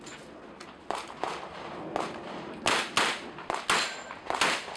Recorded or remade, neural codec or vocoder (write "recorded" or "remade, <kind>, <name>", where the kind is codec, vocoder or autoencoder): recorded